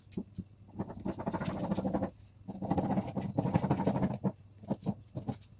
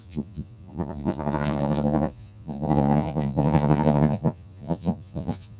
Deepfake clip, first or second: second